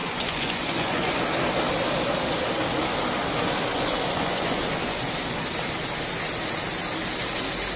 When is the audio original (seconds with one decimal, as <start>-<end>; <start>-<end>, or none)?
1.2-3.7; 5.1-7.8